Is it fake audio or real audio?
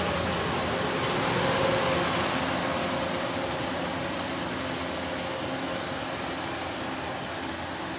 real